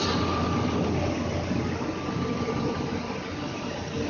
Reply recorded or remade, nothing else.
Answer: recorded